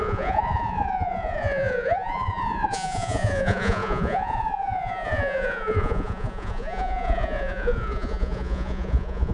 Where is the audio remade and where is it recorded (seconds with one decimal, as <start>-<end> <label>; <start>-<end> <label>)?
0.0-9.3 remade